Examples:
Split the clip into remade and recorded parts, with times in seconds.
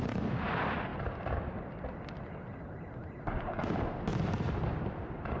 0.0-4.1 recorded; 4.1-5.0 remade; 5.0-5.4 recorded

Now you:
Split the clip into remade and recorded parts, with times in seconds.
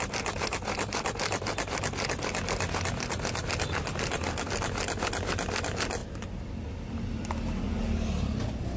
0.0-8.8 recorded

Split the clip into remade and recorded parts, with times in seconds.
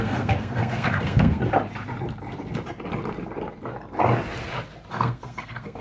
0.0-1.4 remade; 1.4-4.9 recorded; 4.9-5.8 remade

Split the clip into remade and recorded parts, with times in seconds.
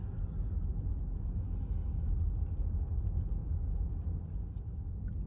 0.0-5.3 recorded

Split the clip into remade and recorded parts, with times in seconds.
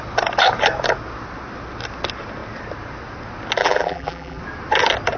0.0-3.6 recorded; 3.6-4.4 remade; 4.4-5.2 recorded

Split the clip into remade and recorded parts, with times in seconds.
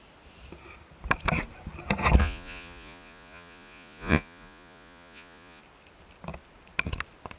0.0-2.2 recorded; 2.2-5.6 remade; 5.6-7.4 recorded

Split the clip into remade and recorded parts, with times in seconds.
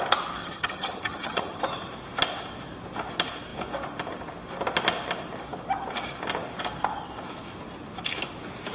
0.0-0.4 recorded; 0.4-1.6 remade; 1.6-8.7 recorded